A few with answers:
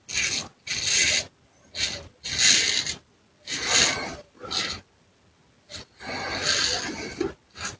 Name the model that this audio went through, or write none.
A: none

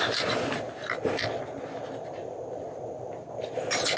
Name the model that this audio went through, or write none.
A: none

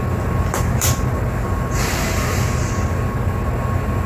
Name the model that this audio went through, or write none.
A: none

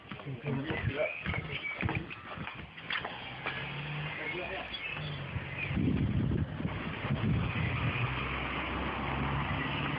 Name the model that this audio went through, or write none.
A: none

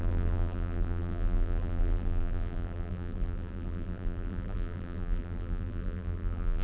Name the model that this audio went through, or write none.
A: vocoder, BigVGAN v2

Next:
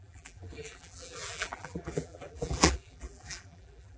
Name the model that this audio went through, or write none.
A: vocoder, BigVGAN v2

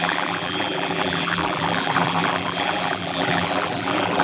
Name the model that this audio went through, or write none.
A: vocoder, BigVGAN v2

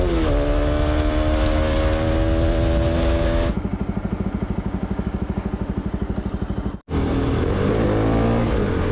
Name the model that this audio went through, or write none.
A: none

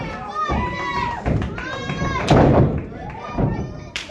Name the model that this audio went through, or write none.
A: vocoder, BigVGAN v2